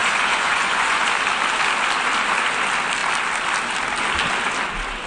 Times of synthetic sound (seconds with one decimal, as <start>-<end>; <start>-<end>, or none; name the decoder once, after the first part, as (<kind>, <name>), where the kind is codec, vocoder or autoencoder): 0.0-1.0 (vocoder, Vocos)